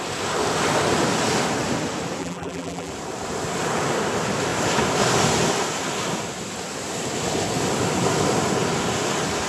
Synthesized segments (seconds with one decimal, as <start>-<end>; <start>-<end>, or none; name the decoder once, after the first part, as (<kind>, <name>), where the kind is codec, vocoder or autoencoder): 2.2-2.9 (vocoder, BigVGAN v2)